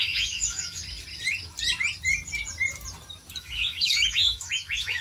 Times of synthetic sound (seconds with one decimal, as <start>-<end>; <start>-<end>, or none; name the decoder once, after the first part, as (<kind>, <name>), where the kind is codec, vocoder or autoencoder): 0.0-0.8 (autoencoder, DAC-VAE); 3.4-5.0